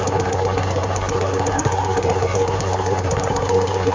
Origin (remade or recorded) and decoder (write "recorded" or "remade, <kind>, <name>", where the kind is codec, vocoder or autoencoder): remade, codec, SNAC